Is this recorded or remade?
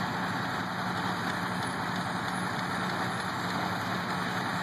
recorded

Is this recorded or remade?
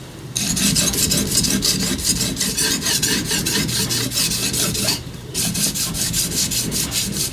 recorded